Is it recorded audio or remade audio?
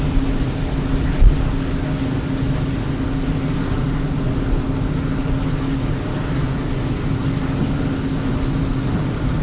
recorded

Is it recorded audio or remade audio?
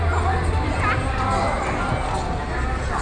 recorded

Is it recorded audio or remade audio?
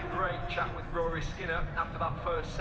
remade